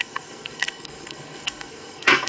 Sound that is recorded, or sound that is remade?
remade